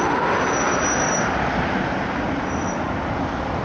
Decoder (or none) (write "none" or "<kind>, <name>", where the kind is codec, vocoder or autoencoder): none